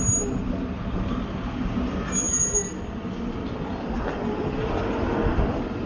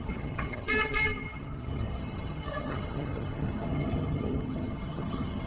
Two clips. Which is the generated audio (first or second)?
second